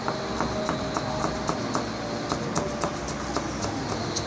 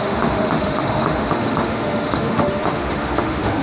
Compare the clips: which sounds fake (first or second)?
second